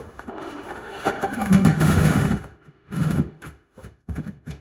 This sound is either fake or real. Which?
fake